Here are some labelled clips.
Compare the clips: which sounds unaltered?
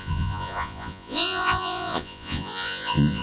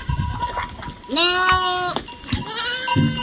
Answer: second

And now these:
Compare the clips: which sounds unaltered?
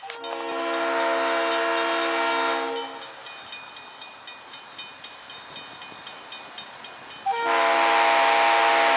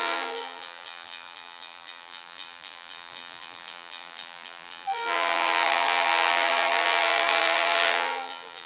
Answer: first